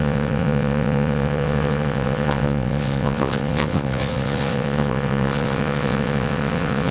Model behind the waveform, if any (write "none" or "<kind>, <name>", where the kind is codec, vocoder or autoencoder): vocoder, WaveNeXt